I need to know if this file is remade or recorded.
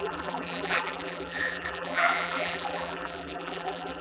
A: remade